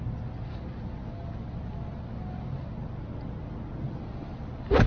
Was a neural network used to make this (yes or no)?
no